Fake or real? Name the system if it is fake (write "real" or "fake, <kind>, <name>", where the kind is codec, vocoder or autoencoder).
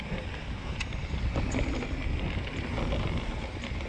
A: real